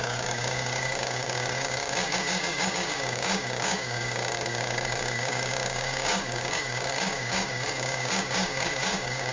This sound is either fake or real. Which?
fake